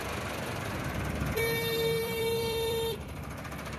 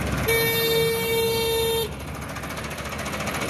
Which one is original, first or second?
second